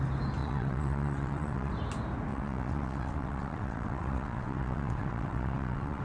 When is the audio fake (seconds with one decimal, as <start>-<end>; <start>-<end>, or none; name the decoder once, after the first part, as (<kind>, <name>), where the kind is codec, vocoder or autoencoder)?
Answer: 0.4-1.7 (vocoder, WaveNeXt); 2.3-6.0